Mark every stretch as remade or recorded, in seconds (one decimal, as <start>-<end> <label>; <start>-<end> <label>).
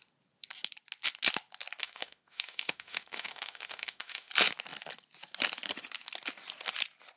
0.0-1.8 recorded; 1.8-4.3 remade; 4.3-7.2 recorded